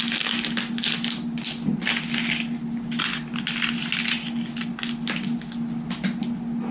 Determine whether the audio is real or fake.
real